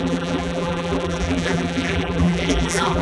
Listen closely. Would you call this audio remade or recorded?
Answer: remade